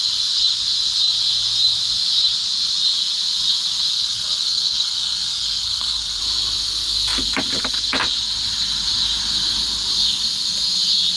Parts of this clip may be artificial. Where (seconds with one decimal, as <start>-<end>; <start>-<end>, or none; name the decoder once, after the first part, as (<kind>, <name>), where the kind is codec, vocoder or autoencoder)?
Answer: 3.9-6.2 (codec, SNAC)